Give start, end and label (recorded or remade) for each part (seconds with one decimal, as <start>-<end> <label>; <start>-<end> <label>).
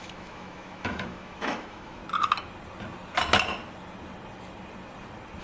0.0-2.0 remade; 2.0-5.4 recorded